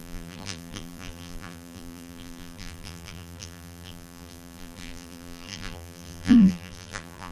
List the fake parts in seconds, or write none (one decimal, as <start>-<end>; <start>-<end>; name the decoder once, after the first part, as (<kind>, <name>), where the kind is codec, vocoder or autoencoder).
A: 0.0-7.3 (vocoder, BigVGAN v2)